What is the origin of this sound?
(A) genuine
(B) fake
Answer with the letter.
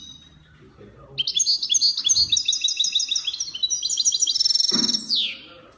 A